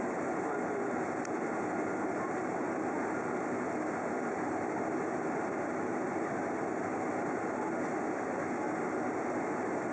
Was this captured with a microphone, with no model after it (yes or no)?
yes